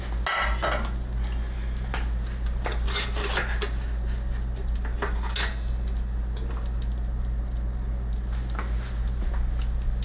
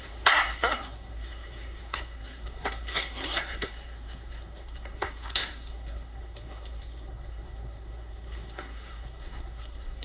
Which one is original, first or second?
first